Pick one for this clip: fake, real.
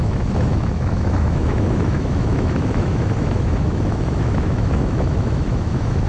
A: fake